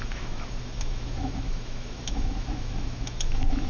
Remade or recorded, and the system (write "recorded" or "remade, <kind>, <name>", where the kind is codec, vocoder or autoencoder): remade, autoencoder, DAC-VAE